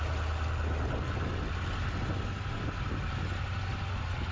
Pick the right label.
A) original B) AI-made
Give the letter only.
A